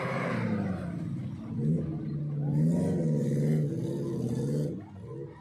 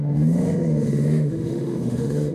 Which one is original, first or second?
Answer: first